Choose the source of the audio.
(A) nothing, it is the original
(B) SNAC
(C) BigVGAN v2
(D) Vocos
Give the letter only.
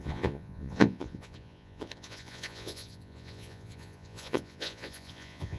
D